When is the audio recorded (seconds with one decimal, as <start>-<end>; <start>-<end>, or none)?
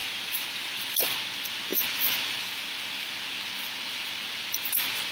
1.2-5.1